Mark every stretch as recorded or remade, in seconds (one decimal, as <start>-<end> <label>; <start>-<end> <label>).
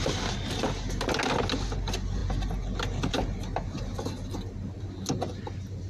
0.0-5.9 recorded